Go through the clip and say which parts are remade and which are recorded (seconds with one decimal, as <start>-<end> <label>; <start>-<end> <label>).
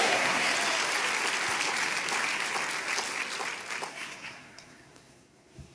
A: 0.0-0.5 remade; 0.5-3.9 recorded; 3.9-5.7 remade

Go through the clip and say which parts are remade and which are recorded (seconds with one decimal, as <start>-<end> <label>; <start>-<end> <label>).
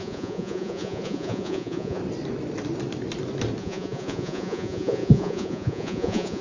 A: 0.0-2.0 remade; 2.0-3.6 recorded; 3.6-6.4 remade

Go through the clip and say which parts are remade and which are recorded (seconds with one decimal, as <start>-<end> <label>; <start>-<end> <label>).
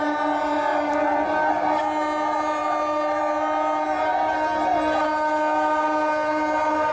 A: 0.0-6.9 recorded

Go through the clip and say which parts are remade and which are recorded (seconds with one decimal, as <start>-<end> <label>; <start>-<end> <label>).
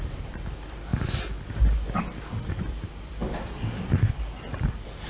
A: 0.0-0.9 remade; 0.9-2.4 recorded; 2.4-5.1 remade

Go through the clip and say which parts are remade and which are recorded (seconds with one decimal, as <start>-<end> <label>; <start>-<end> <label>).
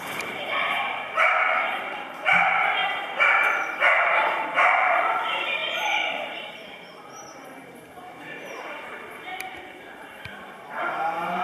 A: 0.0-2.8 remade; 2.8-3.4 recorded; 3.4-11.4 remade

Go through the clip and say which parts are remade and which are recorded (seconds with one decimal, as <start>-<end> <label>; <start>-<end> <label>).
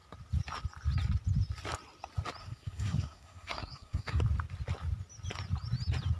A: 0.0-2.4 recorded; 2.4-4.2 remade; 4.2-6.2 recorded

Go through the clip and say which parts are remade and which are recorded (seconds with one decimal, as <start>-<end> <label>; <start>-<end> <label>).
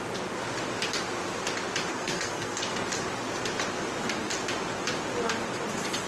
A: 0.0-1.9 recorded; 1.9-2.7 remade; 2.7-6.1 recorded